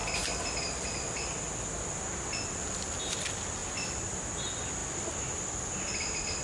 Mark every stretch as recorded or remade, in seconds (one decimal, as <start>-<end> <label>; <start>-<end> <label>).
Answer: 0.0-6.4 recorded